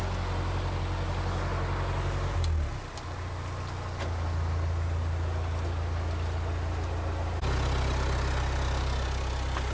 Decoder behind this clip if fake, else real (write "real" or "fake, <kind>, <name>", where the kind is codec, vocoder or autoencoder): real